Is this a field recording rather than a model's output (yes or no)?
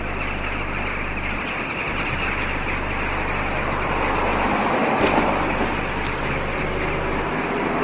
yes